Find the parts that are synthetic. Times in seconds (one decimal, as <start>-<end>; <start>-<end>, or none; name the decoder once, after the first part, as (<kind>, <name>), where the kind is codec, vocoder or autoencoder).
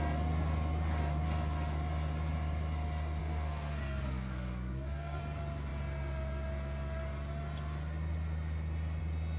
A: 3.2-5.2 (codec, SNAC)